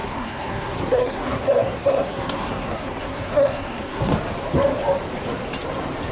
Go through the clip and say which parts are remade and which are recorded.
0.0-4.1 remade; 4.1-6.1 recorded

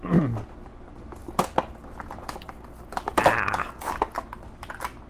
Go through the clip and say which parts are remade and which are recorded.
0.0-5.1 recorded

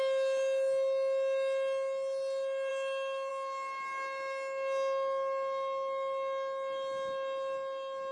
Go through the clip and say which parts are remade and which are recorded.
0.0-8.1 recorded

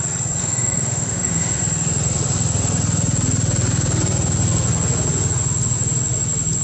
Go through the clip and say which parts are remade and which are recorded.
0.0-0.4 recorded; 0.4-1.6 remade; 1.6-6.6 recorded

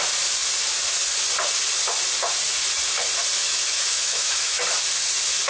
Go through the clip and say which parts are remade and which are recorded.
0.0-3.4 recorded; 3.4-4.6 remade; 4.6-5.5 recorded